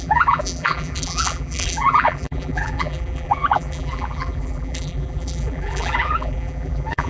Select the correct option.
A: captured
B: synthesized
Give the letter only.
B